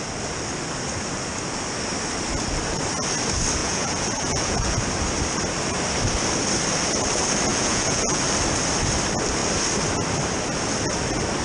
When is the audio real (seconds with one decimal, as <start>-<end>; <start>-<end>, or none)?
0.0-3.6; 4.8-7.5; 8.2-11.4